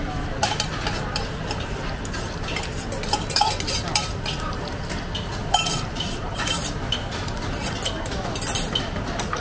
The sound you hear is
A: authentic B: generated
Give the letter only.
A